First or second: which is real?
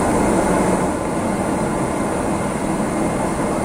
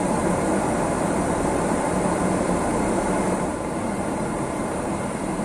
first